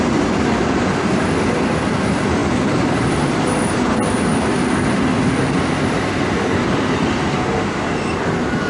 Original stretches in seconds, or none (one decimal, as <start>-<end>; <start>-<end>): none